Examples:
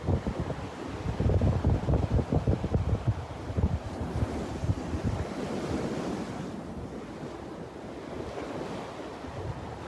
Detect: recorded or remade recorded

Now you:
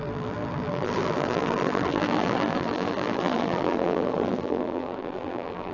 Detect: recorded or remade remade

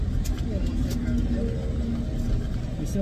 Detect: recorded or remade recorded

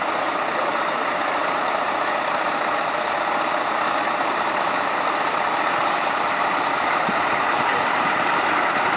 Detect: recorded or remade remade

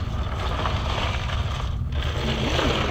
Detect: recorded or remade recorded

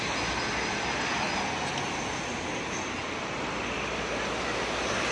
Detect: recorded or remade recorded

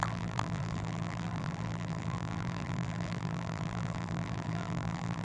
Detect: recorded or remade remade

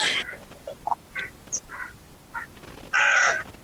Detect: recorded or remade recorded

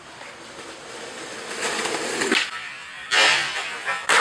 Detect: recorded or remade remade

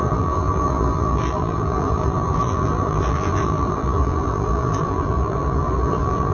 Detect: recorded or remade remade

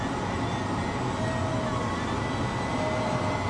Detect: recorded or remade recorded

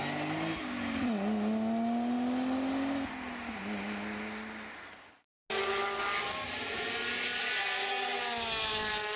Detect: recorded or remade recorded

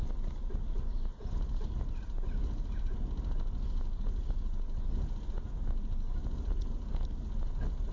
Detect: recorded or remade recorded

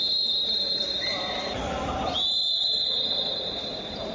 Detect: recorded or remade recorded